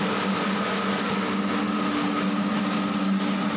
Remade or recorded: recorded